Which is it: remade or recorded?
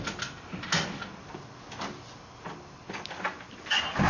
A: recorded